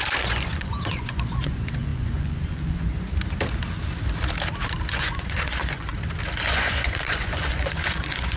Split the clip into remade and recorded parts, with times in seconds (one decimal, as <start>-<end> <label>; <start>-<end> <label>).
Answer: 0.0-3.1 remade; 3.1-4.9 recorded; 4.9-5.9 remade; 5.9-6.5 recorded; 6.5-8.4 remade